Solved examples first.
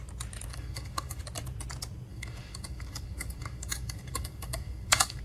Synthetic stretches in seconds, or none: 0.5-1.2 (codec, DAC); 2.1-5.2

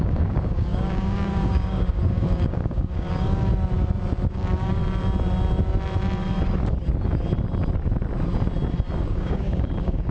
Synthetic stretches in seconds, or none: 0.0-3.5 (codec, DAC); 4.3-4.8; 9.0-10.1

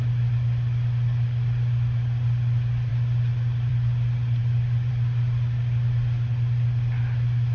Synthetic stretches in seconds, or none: none

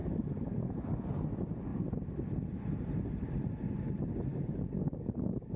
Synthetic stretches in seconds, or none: 0.0-1.1 (codec, DAC); 4.3-5.6

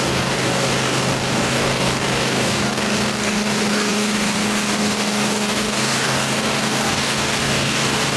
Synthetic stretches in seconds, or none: 0.0-8.2 (codec, DAC)

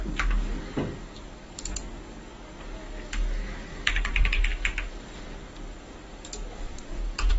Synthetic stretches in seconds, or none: 0.0-7.4 (codec, DAC)